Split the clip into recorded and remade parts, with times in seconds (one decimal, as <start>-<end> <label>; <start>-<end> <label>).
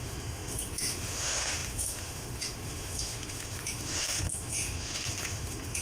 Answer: 0.0-5.8 remade